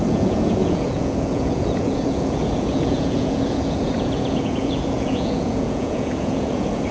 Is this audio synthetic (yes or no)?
yes